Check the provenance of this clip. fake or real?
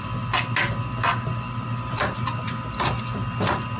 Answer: real